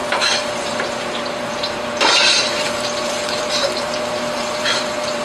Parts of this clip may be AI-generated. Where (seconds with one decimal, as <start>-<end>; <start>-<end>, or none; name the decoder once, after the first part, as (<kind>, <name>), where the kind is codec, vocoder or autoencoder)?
0.0-5.2 (vocoder, BigVGAN v2)